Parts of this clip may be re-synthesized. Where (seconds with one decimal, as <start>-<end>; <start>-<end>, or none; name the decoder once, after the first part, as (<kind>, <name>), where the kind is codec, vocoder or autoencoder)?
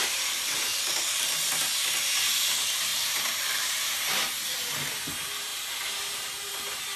0.0-0.7 (vocoder, BigVGAN v2); 2.3-7.0